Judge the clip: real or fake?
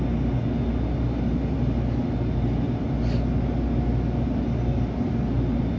real